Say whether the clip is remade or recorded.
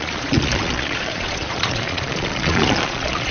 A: remade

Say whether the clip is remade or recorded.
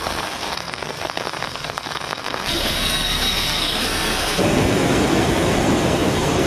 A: remade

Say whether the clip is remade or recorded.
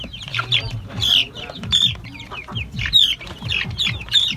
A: remade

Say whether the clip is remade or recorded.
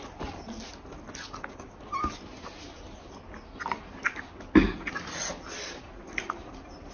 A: recorded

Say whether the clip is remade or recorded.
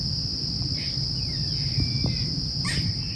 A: recorded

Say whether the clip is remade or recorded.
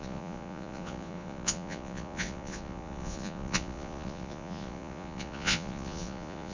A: remade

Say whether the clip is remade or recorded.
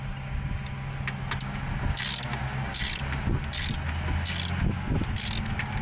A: recorded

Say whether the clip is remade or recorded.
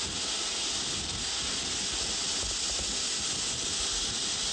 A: recorded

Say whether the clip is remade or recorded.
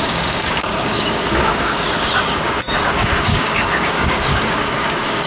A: remade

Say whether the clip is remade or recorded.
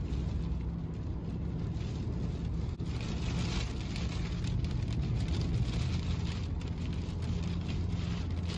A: recorded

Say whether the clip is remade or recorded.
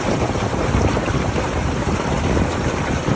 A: remade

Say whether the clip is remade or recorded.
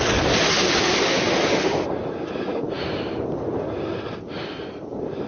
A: recorded